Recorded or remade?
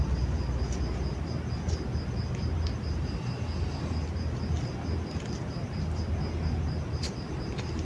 recorded